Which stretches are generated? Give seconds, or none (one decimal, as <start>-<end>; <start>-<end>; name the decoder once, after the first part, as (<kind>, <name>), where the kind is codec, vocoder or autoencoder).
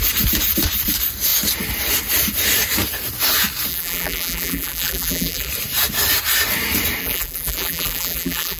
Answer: 3.7-5.5 (vocoder, BigVGAN v2); 7.0-8.6